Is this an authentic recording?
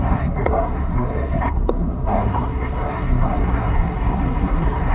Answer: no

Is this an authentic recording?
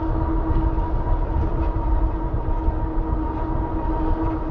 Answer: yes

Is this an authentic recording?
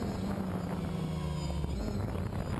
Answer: yes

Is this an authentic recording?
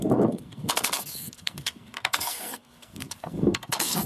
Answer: no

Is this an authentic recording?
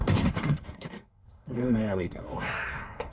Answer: no